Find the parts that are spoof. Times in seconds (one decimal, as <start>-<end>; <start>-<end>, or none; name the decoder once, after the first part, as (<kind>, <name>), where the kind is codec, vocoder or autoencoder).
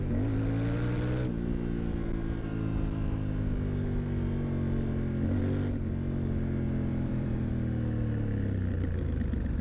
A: 6.9-7.5 (vocoder, BigVGAN v2)